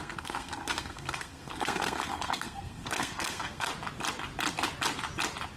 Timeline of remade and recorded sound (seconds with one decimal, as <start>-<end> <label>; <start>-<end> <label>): 0.0-3.7 remade; 3.7-5.6 recorded